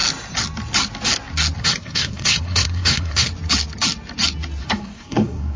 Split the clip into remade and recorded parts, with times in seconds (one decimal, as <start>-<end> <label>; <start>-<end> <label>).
0.0-1.6 recorded; 1.6-3.3 remade; 3.3-4.6 recorded; 4.6-5.6 remade